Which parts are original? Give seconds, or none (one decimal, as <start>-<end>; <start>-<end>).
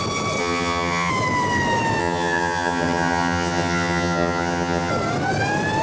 0.0-0.4; 1.1-2.0; 4.9-5.8